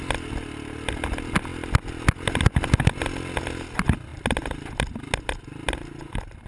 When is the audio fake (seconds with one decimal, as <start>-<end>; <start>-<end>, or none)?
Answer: none